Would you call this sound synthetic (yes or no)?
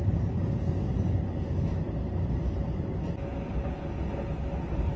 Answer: no